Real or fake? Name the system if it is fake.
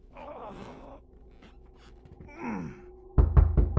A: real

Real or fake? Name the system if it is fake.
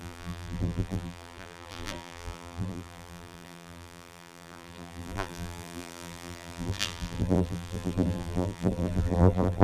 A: fake, vocoder, BigVGAN v2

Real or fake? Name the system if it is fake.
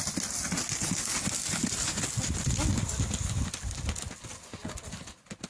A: real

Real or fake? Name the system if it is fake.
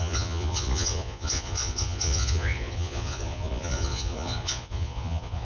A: fake, vocoder, Vocos